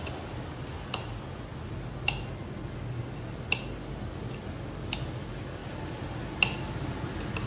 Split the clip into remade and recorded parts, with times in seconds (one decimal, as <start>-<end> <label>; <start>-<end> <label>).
0.0-7.5 recorded